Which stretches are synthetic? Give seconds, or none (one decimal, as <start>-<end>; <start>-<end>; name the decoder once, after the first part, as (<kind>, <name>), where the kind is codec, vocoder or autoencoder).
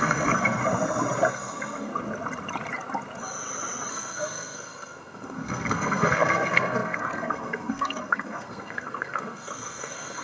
0.0-0.6 (codec, SNAC); 1.3-1.9; 3.9-10.2